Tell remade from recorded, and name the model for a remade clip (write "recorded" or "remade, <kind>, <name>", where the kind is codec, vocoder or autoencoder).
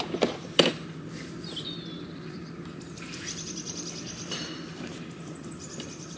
remade, vocoder, BigVGAN v2